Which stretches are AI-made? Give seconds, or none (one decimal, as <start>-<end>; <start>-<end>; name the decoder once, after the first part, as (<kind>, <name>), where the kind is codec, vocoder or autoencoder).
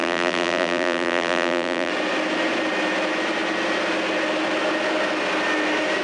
0.0-1.9 (vocoder, BigVGAN v2)